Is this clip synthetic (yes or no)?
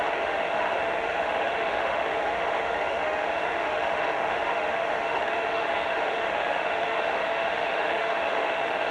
yes